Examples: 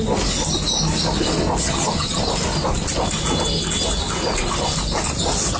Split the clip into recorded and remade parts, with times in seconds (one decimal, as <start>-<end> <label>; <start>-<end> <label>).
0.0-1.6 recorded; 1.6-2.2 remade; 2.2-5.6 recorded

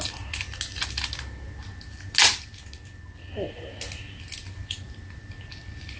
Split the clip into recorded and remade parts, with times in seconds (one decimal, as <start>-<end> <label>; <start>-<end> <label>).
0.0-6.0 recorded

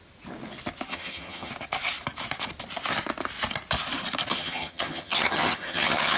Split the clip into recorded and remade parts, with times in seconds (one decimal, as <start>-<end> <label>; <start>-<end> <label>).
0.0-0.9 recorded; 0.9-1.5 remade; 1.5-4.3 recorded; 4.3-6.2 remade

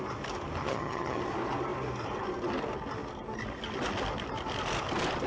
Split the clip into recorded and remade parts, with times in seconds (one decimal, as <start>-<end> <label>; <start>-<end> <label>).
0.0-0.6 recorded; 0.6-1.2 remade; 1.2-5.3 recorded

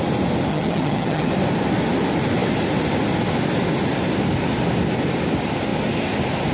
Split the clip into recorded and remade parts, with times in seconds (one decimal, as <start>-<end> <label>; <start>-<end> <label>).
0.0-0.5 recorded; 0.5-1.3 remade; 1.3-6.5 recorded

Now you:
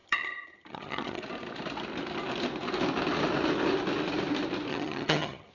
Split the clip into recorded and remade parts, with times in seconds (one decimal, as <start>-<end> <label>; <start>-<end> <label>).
0.0-1.2 remade; 1.2-4.7 recorded; 4.7-5.5 remade

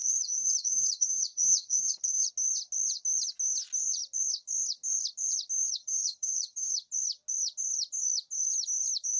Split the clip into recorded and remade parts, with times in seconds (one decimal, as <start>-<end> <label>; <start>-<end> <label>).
0.0-2.3 remade; 2.3-5.8 recorded; 5.8-6.7 remade; 6.7-9.2 recorded

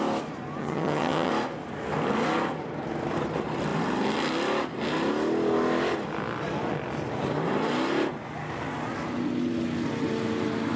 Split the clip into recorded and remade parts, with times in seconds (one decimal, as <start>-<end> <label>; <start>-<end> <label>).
0.0-0.6 recorded; 0.6-1.3 remade; 1.3-10.8 recorded